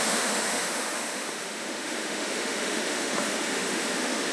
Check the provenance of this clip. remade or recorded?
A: remade